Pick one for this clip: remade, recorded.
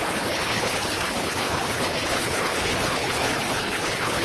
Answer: remade